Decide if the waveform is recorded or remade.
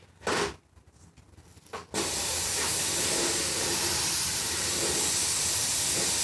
recorded